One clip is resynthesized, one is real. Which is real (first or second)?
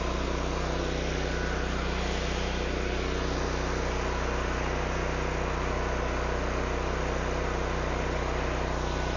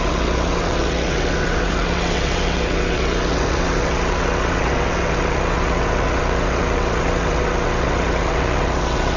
first